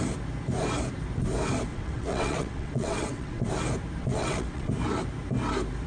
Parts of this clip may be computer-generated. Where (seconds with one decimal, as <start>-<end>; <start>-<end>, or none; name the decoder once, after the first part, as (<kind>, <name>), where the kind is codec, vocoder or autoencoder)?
1.7-3.5 (vocoder, WaveNeXt); 4.0-4.7